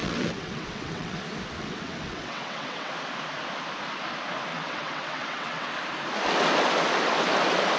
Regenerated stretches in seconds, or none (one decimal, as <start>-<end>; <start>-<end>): 0.0-1.2; 1.6-2.9; 4.5-5.7